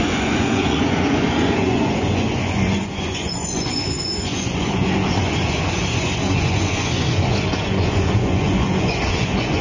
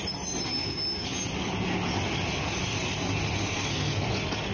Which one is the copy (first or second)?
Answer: first